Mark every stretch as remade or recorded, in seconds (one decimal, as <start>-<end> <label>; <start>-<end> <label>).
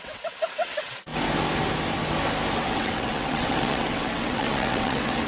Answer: 0.0-1.1 remade; 1.1-2.6 recorded; 2.6-5.3 remade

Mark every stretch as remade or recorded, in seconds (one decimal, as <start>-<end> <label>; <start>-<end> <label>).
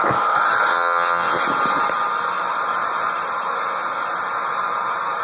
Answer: 0.0-0.7 recorded; 0.7-1.4 remade; 1.4-5.2 recorded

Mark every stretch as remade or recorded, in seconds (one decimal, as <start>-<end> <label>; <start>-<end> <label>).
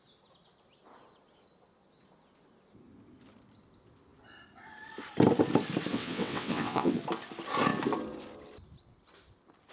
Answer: 0.0-5.9 recorded; 5.9-7.0 remade; 7.0-9.7 recorded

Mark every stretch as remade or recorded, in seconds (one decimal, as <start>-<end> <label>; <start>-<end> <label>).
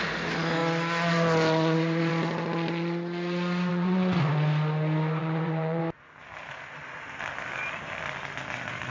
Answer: 0.0-3.7 recorded; 3.7-4.2 remade; 4.2-5.2 recorded; 5.2-5.8 remade; 5.8-8.9 recorded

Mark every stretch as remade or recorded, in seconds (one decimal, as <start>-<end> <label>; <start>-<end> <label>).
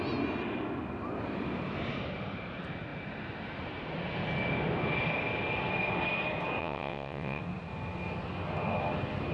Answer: 0.0-6.6 recorded; 6.6-7.4 remade; 7.4-9.3 recorded